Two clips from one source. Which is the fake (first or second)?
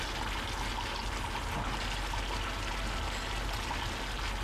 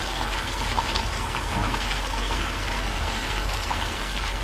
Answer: second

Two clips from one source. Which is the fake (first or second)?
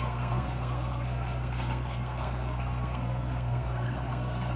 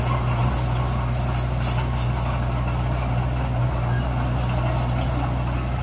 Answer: first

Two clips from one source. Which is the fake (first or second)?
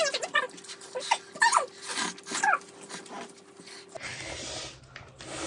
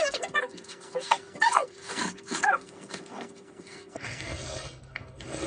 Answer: second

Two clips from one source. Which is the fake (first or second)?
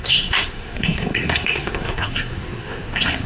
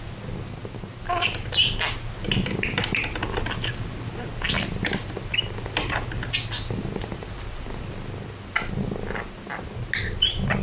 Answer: first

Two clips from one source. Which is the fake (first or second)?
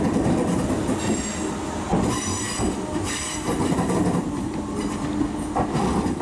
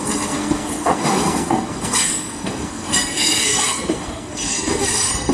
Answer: second